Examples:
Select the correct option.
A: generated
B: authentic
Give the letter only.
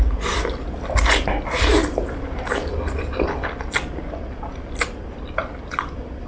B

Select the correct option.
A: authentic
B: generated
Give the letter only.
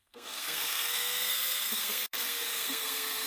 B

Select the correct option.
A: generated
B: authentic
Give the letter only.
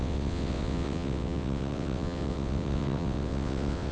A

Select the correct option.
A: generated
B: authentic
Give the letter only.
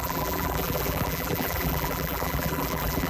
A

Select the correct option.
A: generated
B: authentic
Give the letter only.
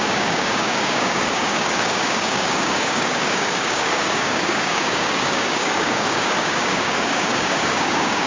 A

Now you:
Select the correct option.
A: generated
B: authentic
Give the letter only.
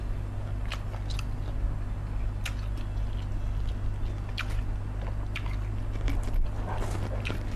B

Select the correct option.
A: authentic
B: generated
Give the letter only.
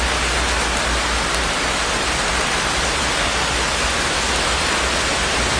A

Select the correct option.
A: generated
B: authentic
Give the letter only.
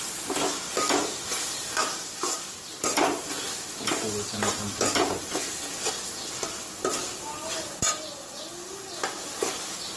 B